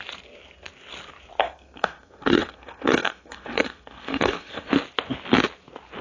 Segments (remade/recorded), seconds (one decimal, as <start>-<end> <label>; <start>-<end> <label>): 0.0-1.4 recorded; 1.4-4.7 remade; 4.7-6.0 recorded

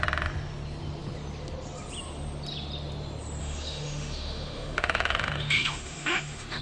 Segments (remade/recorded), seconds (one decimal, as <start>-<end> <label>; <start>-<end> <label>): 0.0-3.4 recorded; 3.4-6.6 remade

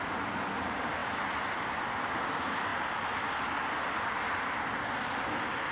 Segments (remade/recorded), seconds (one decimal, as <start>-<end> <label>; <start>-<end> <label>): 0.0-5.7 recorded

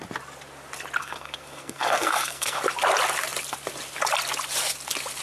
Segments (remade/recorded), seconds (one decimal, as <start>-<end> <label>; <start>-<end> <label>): 0.0-1.0 recorded; 1.0-2.6 remade; 2.6-5.2 recorded

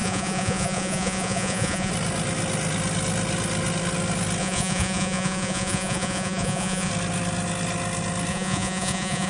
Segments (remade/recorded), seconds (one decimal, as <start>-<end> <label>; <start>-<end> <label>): 0.0-1.9 remade; 1.9-4.4 recorded; 4.4-6.9 remade; 6.9-8.3 recorded; 8.3-9.3 remade

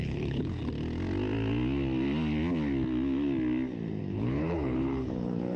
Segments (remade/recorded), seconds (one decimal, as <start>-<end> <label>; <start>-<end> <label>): 0.0-0.6 remade; 0.6-4.0 recorded; 4.0-5.6 remade

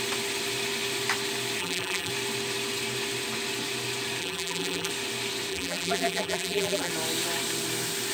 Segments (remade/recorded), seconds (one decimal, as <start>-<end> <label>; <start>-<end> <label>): 0.0-1.6 recorded; 1.6-2.1 remade; 2.1-4.2 recorded; 4.2-4.9 remade; 4.9-5.5 recorded; 5.5-6.9 remade; 6.9-8.1 recorded